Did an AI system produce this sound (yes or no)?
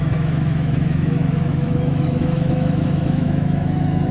yes